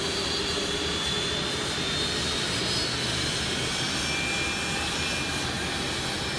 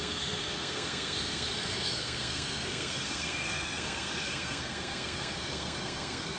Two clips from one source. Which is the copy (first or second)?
second